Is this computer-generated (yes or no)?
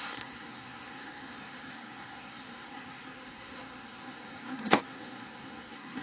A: yes